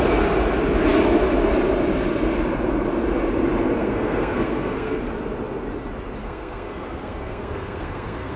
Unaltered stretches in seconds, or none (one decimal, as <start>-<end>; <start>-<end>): 0.0-3.8; 5.0-6.2